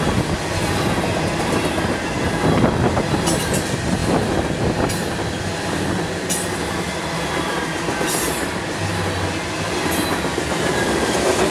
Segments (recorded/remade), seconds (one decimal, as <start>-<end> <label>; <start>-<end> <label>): 0.0-11.5 recorded